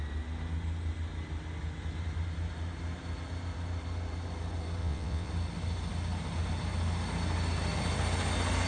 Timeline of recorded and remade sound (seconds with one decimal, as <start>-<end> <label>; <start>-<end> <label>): 0.0-4.8 recorded; 4.8-5.3 remade; 5.3-8.7 recorded